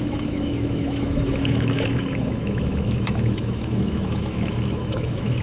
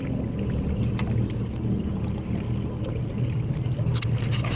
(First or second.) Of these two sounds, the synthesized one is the first